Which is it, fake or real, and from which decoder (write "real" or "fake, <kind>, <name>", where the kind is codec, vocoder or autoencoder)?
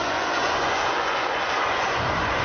fake, vocoder, Vocos